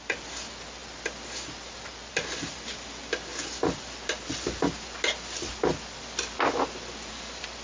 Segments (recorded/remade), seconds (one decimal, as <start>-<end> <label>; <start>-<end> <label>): 0.0-0.8 remade; 0.8-2.1 recorded; 2.1-3.3 remade; 3.3-7.1 recorded; 7.1-7.6 remade